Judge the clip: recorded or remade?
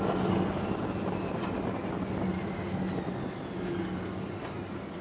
recorded